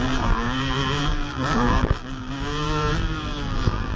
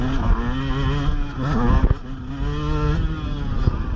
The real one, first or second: second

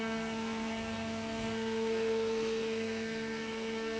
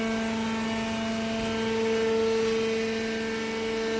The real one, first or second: second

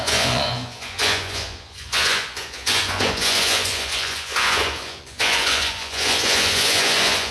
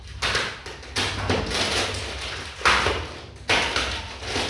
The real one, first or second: second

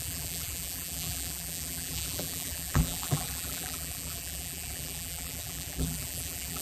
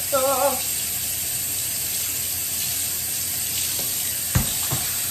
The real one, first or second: second